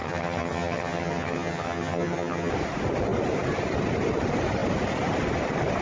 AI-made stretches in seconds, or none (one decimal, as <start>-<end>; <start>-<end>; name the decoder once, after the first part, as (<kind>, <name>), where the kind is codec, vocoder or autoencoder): 0.0-2.5 (vocoder, HiFi-GAN)